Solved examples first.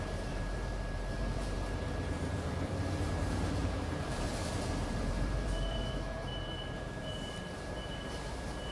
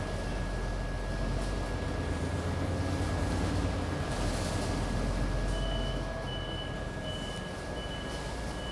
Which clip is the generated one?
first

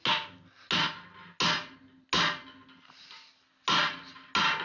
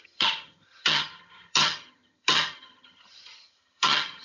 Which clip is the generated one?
second